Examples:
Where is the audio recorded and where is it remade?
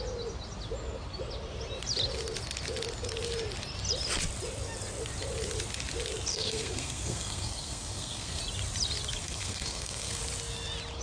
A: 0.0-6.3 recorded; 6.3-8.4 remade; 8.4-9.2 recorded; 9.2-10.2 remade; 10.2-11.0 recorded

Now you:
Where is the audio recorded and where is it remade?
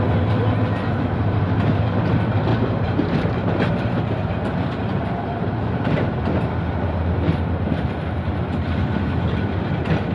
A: 0.0-2.5 recorded; 2.5-6.2 remade; 6.2-10.1 recorded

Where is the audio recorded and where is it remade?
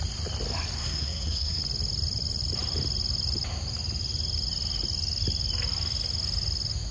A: 0.0-0.8 recorded; 0.8-1.6 remade; 1.6-6.9 recorded